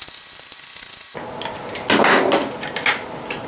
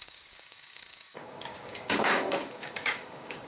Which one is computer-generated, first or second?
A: second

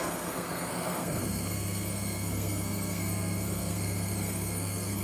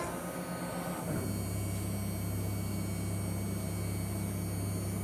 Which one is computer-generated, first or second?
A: first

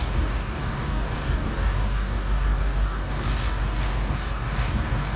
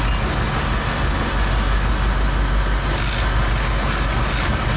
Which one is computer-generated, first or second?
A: first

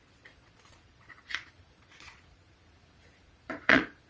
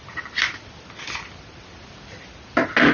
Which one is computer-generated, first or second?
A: first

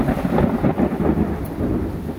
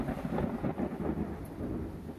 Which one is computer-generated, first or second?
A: first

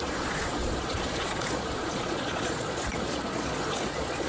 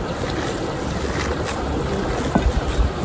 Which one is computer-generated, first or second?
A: first